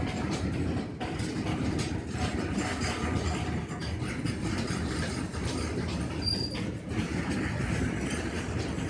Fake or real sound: real